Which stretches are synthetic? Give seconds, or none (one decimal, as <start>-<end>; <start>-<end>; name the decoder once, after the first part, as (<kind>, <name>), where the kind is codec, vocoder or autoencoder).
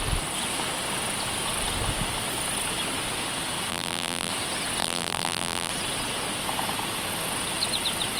3.7-4.3 (vocoder, BigVGAN v2); 4.8-5.7